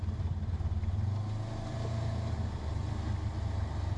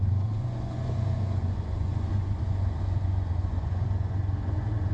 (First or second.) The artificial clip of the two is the second